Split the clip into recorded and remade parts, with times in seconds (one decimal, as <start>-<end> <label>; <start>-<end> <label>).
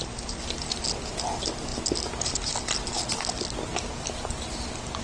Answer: 0.0-5.0 recorded